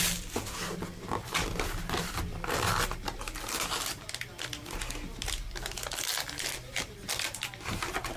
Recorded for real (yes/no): yes